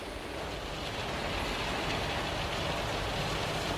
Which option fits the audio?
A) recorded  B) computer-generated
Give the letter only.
A